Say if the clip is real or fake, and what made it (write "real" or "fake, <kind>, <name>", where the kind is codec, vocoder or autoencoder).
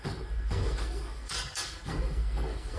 fake, codec, SNAC